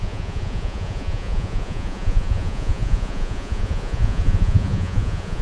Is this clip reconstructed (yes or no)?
yes